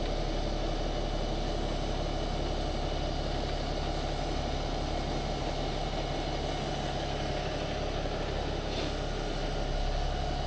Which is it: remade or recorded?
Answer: recorded